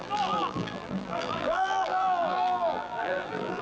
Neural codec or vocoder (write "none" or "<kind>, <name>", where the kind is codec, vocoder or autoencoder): vocoder, BigVGAN v2